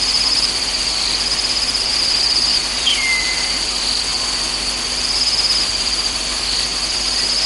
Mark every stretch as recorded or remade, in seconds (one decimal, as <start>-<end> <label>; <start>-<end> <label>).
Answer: 0.0-4.1 remade; 4.1-5.6 recorded; 5.6-6.7 remade; 6.7-7.5 recorded